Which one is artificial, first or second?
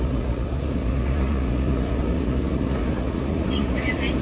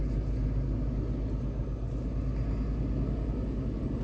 first